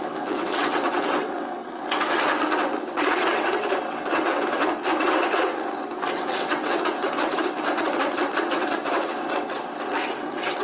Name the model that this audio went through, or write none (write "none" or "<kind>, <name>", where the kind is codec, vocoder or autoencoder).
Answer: vocoder, WaveNeXt